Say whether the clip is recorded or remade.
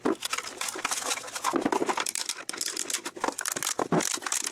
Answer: recorded